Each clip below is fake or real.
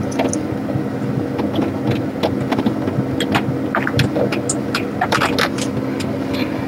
real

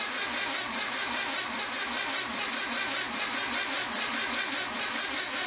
real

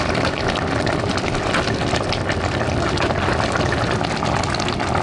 real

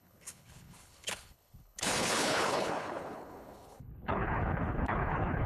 fake